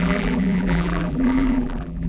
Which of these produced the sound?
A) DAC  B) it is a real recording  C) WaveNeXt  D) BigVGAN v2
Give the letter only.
D